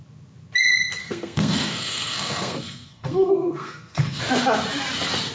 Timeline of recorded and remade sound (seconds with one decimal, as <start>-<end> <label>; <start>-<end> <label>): 0.0-1.0 recorded; 1.0-4.2 remade; 4.2-5.3 recorded